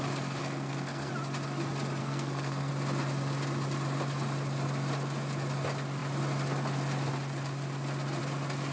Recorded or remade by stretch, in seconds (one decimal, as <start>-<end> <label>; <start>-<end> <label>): 0.0-0.4 recorded; 0.4-1.1 remade; 1.1-2.0 recorded; 2.0-2.7 remade; 2.7-8.7 recorded